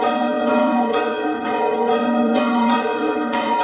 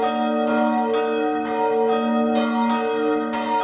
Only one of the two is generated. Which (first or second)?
first